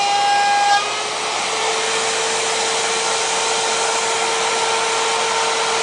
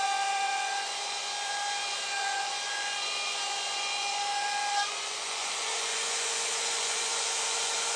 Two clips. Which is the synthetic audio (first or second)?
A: second